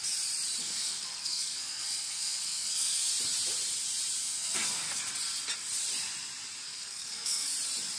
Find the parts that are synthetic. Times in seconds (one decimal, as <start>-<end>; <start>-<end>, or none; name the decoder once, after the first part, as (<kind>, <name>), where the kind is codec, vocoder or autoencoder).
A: 0.6-3.1 (codec, SNAC); 4.2-5.0; 6.6-7.5